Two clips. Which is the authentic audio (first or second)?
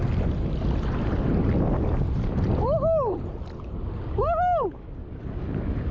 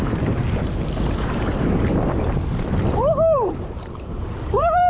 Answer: first